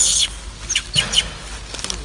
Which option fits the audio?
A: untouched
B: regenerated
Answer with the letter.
A